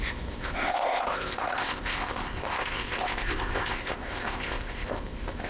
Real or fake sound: fake